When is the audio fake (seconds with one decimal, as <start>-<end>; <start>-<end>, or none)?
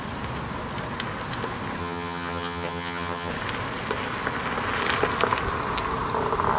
1.8-3.3